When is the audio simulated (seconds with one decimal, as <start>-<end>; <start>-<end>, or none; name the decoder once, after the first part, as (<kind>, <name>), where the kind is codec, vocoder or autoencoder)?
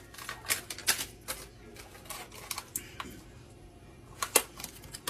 0.0-0.8 (vocoder, BigVGAN v2); 2.8-5.1